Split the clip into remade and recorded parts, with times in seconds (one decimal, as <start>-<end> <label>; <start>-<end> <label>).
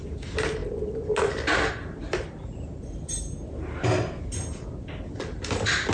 0.0-5.9 recorded